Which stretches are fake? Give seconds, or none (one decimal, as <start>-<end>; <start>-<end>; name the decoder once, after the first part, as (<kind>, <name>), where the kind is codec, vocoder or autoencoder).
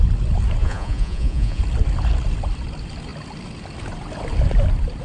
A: 0.6-1.6 (vocoder, Vocos)